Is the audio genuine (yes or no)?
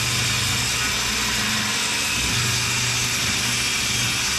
yes